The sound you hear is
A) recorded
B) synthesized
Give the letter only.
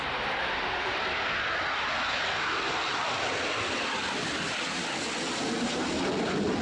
A